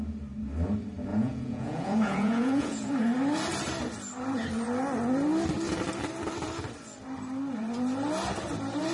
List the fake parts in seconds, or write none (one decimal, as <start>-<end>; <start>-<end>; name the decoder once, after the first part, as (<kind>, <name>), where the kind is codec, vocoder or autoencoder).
1.1-2.9 (vocoder, Vocos)